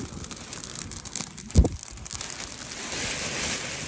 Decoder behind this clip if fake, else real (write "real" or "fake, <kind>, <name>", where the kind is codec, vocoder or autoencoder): real